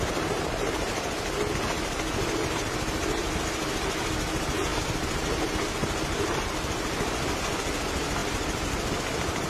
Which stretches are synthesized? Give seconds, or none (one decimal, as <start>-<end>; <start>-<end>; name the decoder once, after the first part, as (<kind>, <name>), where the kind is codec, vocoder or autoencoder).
none